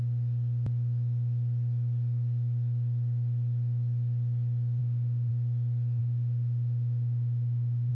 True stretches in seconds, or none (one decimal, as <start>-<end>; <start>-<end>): 0.0-4.8; 5.3-6.0